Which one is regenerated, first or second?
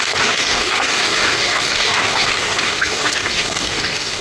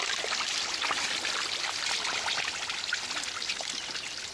first